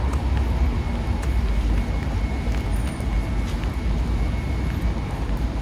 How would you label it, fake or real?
real